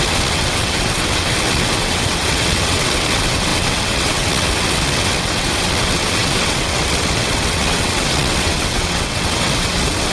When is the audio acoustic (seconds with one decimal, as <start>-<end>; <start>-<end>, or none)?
none